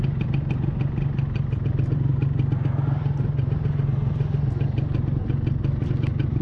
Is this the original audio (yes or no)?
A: yes